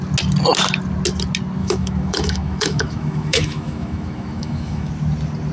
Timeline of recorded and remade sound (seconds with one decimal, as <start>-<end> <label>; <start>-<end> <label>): 0.0-1.6 recorded; 1.6-4.9 remade; 4.9-5.5 recorded